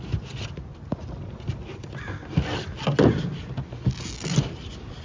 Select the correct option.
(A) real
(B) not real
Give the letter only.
A